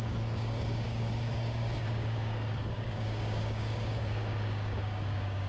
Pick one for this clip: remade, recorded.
remade